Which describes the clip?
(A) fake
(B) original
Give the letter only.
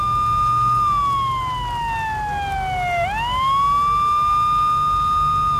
B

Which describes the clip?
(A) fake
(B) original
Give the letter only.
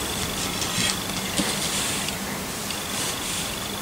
B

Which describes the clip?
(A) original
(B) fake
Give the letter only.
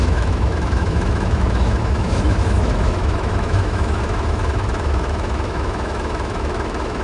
B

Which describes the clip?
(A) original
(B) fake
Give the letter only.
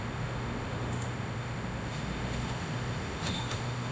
B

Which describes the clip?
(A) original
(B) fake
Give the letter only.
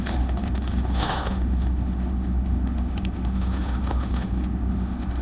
B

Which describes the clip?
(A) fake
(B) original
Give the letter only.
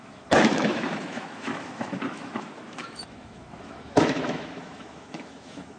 A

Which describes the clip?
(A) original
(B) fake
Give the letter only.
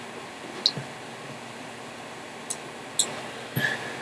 A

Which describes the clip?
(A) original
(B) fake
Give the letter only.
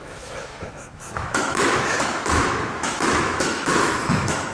B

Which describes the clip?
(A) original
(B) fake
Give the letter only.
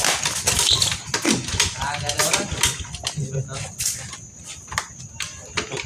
A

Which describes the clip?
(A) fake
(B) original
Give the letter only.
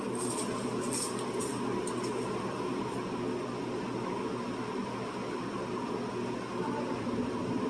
B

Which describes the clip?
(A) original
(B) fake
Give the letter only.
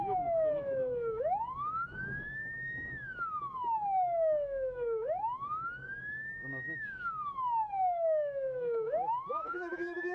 B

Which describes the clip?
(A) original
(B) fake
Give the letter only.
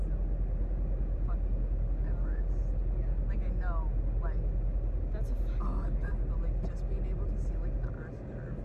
A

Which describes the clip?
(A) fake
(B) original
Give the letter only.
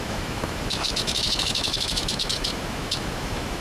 A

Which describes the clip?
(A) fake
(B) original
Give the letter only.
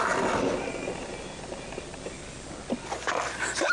B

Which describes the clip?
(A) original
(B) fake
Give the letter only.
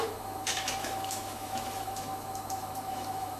B